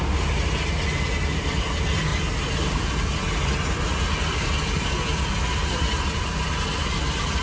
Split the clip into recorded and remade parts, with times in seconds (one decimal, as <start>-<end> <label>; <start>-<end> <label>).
0.0-7.4 recorded